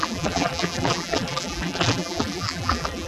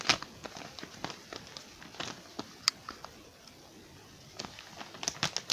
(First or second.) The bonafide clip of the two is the second